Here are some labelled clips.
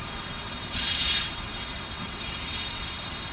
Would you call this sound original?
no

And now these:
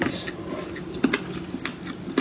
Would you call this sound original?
yes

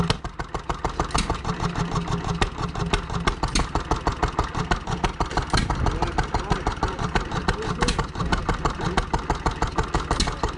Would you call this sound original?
yes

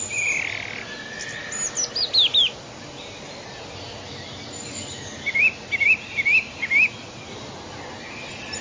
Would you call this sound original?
yes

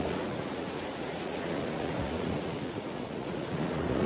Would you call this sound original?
no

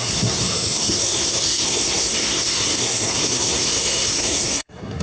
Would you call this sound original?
no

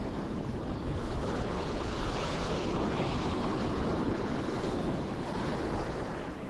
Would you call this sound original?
no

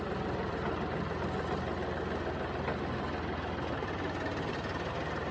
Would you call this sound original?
yes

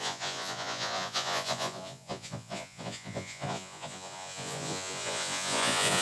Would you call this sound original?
no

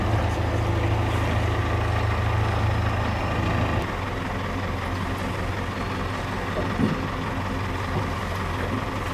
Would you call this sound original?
yes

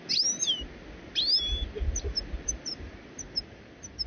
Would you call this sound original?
yes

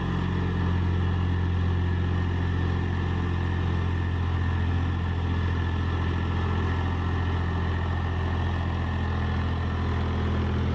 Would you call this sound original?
yes